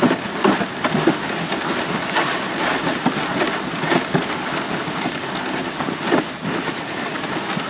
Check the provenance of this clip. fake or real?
real